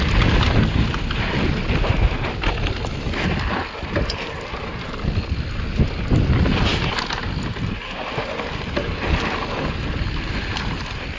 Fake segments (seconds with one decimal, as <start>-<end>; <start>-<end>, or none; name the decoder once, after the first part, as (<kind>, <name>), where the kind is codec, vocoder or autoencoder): none